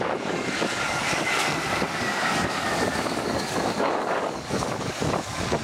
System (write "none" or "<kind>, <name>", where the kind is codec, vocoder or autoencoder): codec, DAC